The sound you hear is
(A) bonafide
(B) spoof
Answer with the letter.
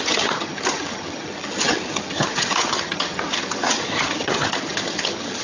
B